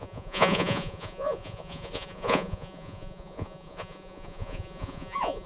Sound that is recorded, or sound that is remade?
remade